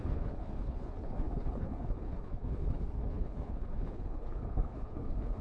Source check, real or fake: fake